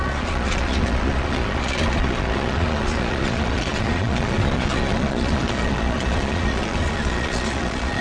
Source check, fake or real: fake